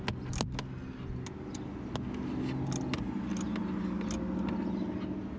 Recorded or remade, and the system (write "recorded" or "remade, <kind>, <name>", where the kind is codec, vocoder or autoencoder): recorded